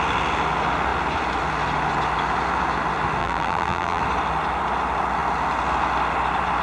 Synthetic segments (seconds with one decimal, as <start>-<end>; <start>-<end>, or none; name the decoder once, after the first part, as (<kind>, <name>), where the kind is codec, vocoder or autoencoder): 3.2-4.0 (vocoder, BigVGAN v2)